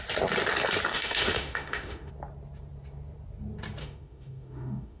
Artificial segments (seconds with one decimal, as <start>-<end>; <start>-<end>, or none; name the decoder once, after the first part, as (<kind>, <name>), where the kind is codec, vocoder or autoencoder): 0.9-2.1 (autoencoder, DAC-VAE); 3.8-5.0